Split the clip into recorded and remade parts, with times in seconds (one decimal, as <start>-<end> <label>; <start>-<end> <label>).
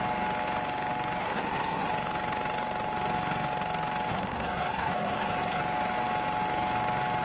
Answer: 0.0-1.2 recorded; 1.2-1.9 remade; 1.9-4.1 recorded; 4.1-5.6 remade; 5.6-7.2 recorded